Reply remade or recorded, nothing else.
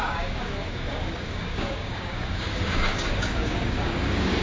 remade